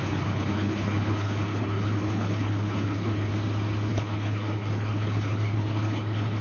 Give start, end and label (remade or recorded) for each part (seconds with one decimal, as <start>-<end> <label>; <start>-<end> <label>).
0.0-3.3 remade; 3.3-3.9 recorded; 3.9-6.4 remade

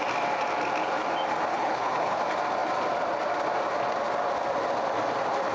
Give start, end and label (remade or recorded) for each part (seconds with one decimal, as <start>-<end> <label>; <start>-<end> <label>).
0.0-1.5 recorded; 1.5-2.2 remade; 2.2-5.5 recorded

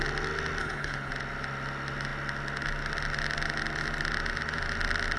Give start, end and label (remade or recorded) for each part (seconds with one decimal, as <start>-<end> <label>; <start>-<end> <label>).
0.0-0.6 recorded; 0.6-1.1 remade; 1.1-5.2 recorded

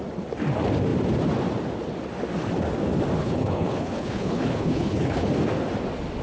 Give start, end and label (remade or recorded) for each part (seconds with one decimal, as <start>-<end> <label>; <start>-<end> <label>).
0.0-3.2 recorded; 3.2-5.3 remade; 5.3-6.2 recorded

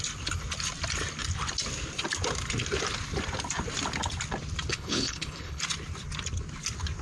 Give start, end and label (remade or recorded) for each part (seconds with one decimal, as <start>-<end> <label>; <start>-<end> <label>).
0.0-4.7 recorded; 4.7-5.6 remade; 5.6-7.0 recorded

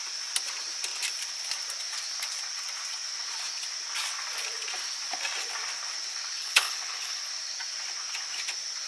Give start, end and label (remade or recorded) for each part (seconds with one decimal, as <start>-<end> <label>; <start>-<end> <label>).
0.0-6.4 recorded; 6.4-7.2 remade; 7.2-8.9 recorded

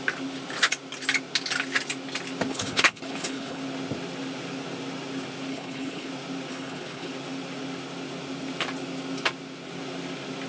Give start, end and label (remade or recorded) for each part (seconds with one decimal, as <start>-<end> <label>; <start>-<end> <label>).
0.0-2.5 recorded; 2.5-3.6 remade; 3.6-5.5 recorded; 5.5-6.1 remade; 6.1-6.5 recorded; 6.5-7.1 remade; 7.1-10.5 recorded

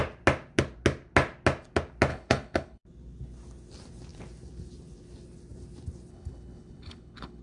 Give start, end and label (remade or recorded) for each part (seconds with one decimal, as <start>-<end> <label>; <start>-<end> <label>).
0.0-2.1 recorded; 2.1-2.8 remade; 2.8-6.1 recorded; 6.1-7.4 remade